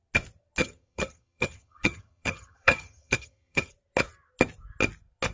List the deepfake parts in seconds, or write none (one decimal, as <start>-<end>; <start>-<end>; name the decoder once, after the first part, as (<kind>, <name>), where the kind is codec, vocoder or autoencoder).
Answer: 0.6-3.7 (vocoder, HiFi-GAN)